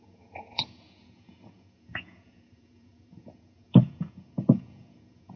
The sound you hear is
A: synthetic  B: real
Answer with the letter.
A